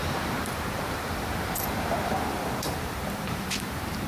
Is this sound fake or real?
fake